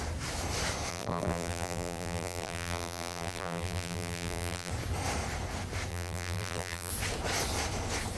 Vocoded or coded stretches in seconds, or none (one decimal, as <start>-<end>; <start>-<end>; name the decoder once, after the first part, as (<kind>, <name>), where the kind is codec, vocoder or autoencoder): 0.9-4.7 (vocoder, BigVGAN v2); 5.9-6.9